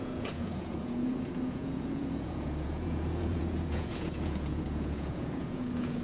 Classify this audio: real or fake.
fake